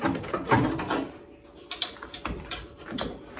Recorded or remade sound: recorded